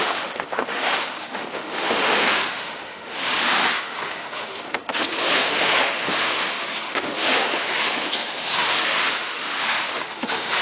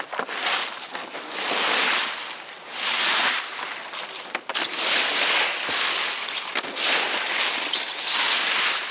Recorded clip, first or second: second